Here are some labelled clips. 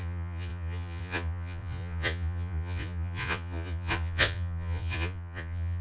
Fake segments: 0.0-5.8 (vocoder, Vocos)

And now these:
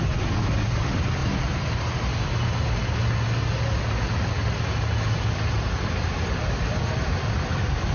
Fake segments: none

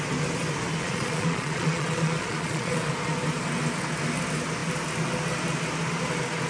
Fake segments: 0.8-2.9 (vocoder, Vocos)

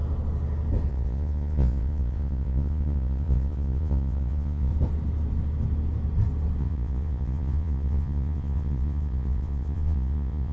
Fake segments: 0.9-4.7 (vocoder, Vocos); 6.6-10.5

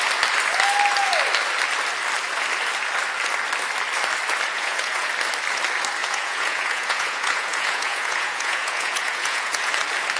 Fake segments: 4.5-5.1 (vocoder, Vocos); 6.0-9.7

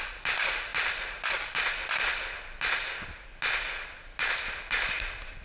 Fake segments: none

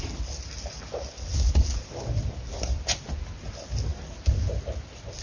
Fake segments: none

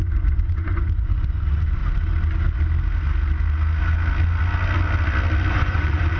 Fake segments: 0.0-1.8 (vocoder, Vocos); 5.5-6.2